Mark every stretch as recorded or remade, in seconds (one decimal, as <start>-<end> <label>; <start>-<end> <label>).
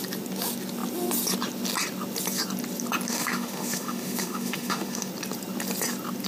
0.0-3.1 recorded; 3.1-5.1 remade; 5.1-6.3 recorded